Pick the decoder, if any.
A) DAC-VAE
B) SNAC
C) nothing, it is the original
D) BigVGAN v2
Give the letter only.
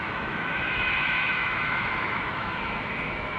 A